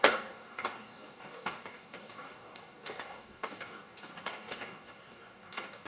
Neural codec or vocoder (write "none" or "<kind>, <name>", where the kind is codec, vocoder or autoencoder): codec, DAC